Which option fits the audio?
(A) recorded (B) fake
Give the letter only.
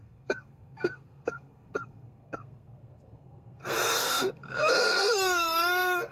B